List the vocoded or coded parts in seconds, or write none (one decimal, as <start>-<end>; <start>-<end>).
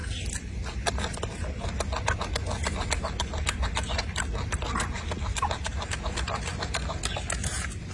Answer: none